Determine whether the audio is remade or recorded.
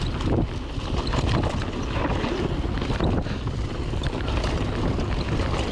recorded